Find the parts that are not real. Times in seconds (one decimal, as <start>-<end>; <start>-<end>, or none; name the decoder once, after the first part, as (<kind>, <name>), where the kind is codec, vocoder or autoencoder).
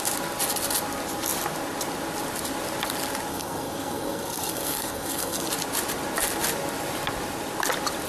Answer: 3.3-5.5 (codec, SNAC)